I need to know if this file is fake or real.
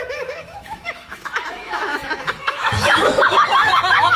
fake